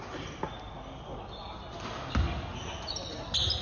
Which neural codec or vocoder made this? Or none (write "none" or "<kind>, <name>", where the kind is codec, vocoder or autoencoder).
none